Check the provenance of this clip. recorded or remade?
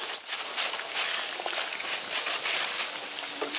recorded